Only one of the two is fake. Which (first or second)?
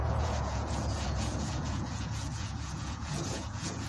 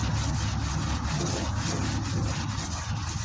first